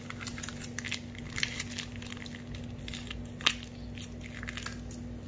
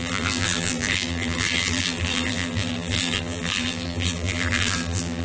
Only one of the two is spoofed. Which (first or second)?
second